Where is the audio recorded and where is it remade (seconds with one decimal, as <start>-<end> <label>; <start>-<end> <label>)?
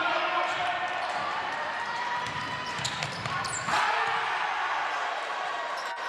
0.0-0.6 recorded; 0.6-3.9 remade; 3.9-5.0 recorded; 5.0-5.6 remade; 5.6-6.1 recorded